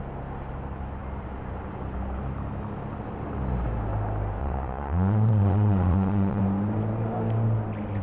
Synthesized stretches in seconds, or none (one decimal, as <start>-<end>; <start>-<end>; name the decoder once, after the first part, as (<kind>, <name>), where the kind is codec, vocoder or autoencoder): 4.4-6.4 (vocoder, Vocos)